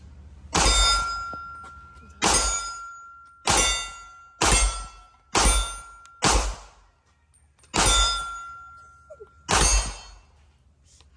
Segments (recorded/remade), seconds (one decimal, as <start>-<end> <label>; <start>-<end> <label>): 0.0-11.2 recorded